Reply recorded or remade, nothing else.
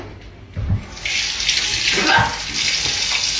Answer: recorded